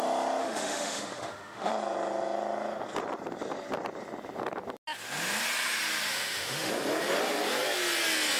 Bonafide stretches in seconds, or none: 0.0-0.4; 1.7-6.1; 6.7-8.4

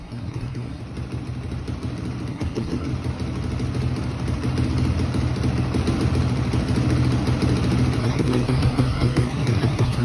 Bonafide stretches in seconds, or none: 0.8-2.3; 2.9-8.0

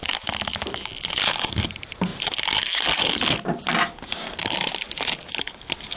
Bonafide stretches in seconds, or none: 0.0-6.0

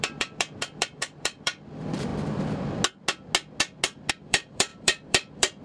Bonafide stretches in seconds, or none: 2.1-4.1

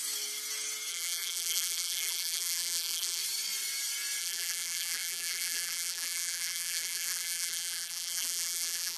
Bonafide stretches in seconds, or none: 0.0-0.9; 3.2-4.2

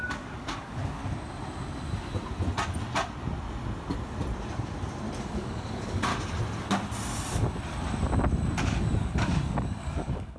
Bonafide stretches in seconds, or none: 1.0-5.2; 6.1-8.6

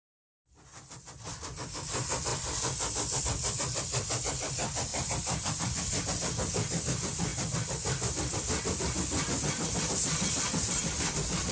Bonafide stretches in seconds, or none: 0.0-4.9; 6.0-11.5